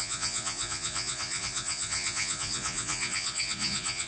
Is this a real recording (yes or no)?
no